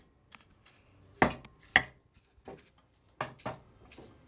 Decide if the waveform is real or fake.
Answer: real